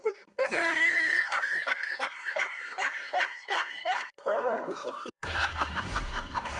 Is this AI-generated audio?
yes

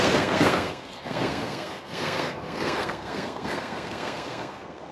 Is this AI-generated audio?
yes